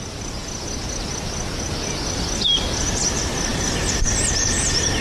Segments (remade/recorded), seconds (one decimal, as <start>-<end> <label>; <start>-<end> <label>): 0.0-3.5 recorded; 3.5-5.0 remade